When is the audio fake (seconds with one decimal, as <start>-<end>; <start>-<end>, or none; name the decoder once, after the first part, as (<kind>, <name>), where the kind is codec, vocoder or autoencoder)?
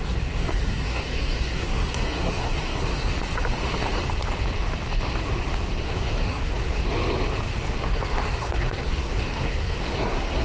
0.0-3.1 (codec, SNAC); 5.8-6.8; 7.8-10.4